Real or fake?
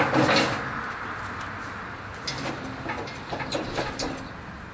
real